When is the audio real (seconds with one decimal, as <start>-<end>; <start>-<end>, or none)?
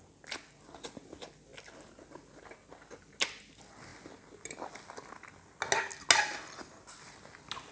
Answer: 0.0-7.7